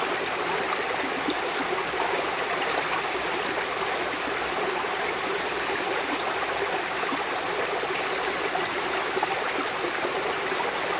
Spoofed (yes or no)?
yes